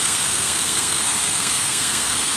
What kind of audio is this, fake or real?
fake